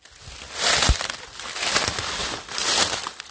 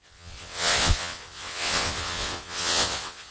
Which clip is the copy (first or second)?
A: second